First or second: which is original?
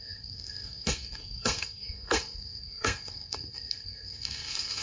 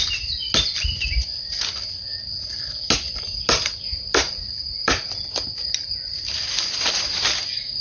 second